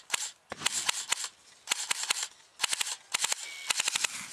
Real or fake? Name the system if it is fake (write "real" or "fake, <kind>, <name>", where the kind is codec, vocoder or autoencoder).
real